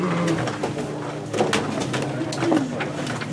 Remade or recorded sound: recorded